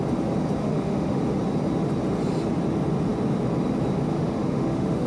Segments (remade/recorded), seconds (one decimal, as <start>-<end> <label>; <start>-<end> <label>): 0.0-0.6 recorded; 0.6-1.2 remade; 1.2-4.1 recorded; 4.1-5.1 remade